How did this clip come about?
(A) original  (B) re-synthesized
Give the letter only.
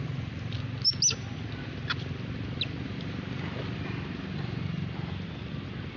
A